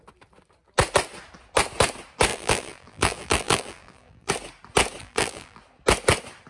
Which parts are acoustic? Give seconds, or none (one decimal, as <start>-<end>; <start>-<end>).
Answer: 0.0-2.3; 4.3-5.0; 5.6-6.5